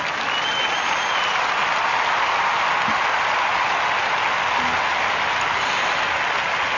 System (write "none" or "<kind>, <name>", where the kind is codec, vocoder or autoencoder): none